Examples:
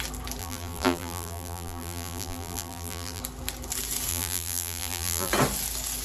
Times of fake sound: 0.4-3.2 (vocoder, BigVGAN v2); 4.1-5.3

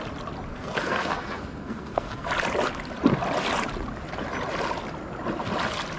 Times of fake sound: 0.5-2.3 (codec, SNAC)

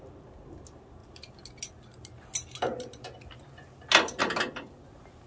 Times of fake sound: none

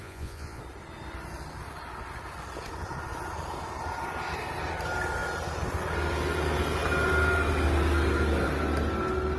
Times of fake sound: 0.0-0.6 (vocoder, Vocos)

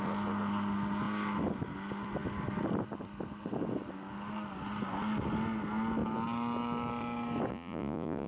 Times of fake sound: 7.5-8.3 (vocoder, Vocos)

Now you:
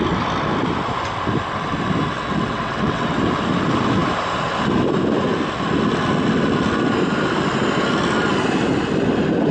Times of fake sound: 2.2-3.2 (vocoder, WaveNeXt)